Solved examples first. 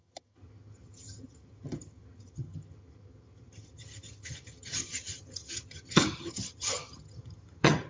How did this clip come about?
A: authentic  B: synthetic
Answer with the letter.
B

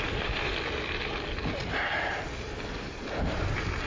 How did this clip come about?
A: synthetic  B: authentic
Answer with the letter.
B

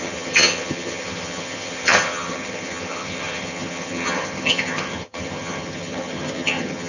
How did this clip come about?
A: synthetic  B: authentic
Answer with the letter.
A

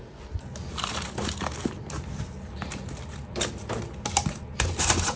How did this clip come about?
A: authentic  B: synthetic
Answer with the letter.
A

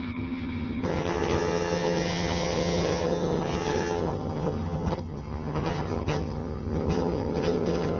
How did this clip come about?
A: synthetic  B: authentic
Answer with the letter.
A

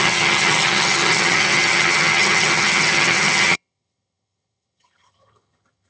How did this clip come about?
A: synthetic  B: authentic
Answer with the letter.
A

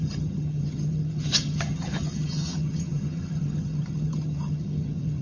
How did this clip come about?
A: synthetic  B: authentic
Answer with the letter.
A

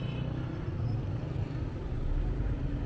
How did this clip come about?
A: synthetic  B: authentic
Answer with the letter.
B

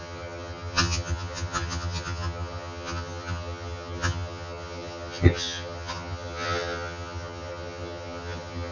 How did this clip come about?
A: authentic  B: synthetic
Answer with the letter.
B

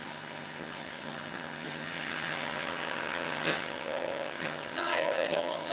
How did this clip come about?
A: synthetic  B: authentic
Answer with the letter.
A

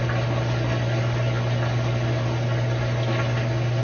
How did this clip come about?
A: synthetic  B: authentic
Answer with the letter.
B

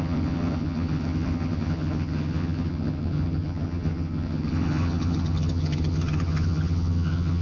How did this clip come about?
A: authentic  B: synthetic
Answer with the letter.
B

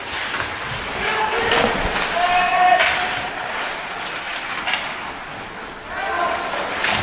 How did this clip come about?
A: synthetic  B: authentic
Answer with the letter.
B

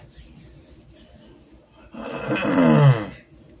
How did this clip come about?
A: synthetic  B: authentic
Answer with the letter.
B